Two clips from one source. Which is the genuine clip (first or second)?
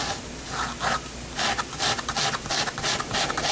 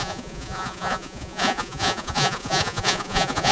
first